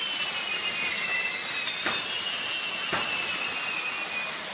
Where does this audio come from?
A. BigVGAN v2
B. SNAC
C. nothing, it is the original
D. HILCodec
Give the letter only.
C